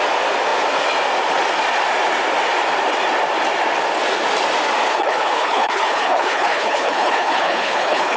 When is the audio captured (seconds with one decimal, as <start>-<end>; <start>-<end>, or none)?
0.0-4.9